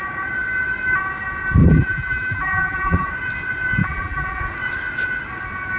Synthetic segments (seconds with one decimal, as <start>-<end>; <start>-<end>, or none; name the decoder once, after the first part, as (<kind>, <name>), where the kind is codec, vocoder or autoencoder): 1.6-3.1 (vocoder, BigVGAN v2); 3.8-4.4